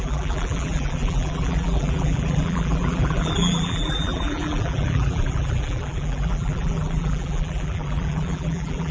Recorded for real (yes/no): no